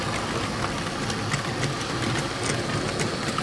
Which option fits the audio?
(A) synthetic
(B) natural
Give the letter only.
B